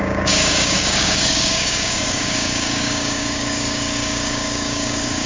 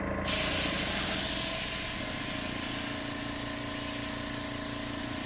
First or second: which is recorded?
second